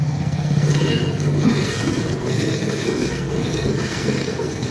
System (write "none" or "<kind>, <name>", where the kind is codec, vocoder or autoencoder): codec, SNAC